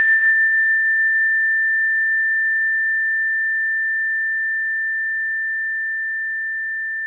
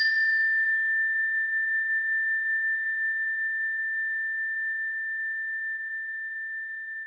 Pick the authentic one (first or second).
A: first